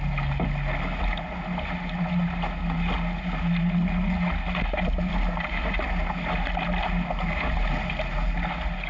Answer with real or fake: real